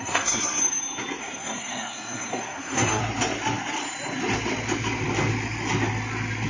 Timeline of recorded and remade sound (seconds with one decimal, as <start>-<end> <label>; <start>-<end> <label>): 0.0-0.6 remade; 0.6-1.2 recorded; 1.2-3.0 remade; 3.0-6.5 recorded